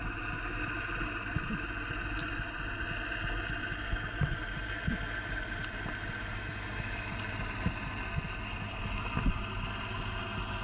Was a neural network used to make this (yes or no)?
no